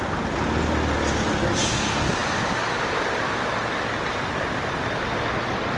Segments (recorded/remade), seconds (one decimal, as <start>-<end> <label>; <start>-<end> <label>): 0.0-5.8 recorded